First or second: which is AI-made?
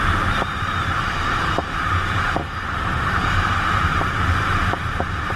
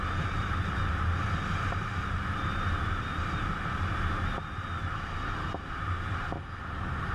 first